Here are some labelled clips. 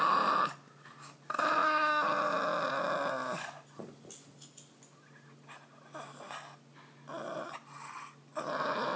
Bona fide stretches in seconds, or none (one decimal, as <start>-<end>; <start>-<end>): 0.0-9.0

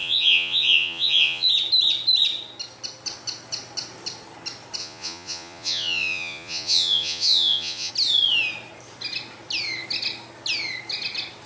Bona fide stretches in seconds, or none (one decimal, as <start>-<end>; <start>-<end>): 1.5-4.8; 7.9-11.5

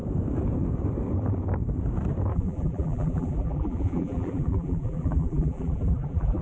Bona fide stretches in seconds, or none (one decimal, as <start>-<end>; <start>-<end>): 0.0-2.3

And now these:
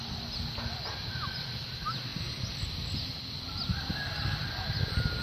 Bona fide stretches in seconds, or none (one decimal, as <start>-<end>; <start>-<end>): 0.0-5.2

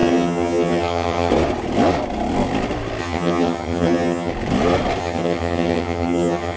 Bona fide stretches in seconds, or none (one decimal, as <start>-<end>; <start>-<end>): 1.3-3.0; 4.3-5.0